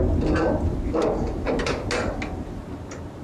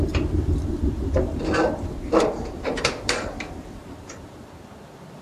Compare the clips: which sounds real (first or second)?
first